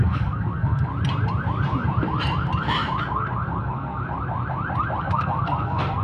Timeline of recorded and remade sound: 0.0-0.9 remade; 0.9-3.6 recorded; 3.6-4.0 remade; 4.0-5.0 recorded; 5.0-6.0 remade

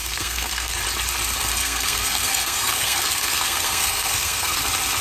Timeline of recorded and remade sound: 0.0-0.8 remade; 0.8-1.6 recorded; 1.6-4.6 remade; 4.6-5.0 recorded

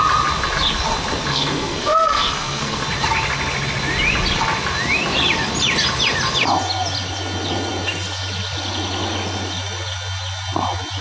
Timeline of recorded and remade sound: 0.0-1.3 recorded; 1.3-2.8 remade; 2.8-11.0 recorded

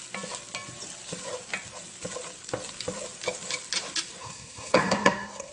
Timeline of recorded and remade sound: 0.0-4.2 recorded; 4.2-5.5 remade

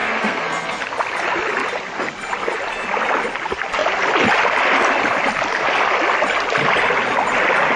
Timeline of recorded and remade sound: 0.0-0.8 remade; 0.8-7.8 recorded

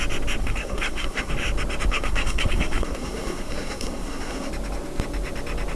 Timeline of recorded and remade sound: 0.0-0.4 recorded; 0.4-1.3 remade; 1.3-1.9 recorded; 1.9-4.5 remade; 4.5-5.8 recorded

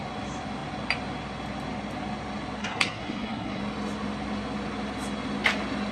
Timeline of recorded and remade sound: 0.0-2.6 recorded; 2.6-3.6 remade; 3.6-5.9 recorded